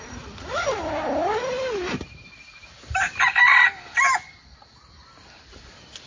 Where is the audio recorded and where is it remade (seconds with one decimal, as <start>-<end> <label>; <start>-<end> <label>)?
0.0-6.1 recorded